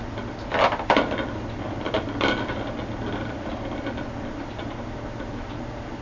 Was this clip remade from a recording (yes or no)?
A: no